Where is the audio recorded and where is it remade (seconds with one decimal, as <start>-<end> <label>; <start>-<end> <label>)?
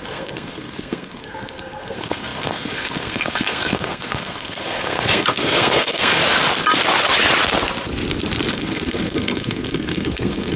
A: 0.0-6.2 remade; 6.2-8.5 recorded; 8.5-10.6 remade